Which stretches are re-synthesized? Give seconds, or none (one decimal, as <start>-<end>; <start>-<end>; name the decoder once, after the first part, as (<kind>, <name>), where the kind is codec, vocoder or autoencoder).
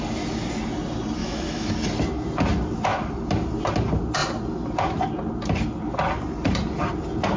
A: 1.2-1.7 (autoencoder, DAC-VAE)